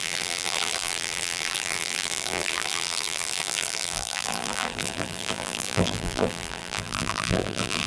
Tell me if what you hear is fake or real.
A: fake